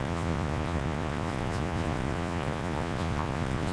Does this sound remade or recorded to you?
remade